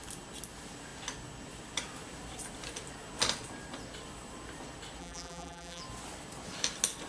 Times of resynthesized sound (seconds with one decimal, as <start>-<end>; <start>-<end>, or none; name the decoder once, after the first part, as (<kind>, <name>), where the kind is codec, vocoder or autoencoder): 5.0-5.8 (vocoder, BigVGAN v2)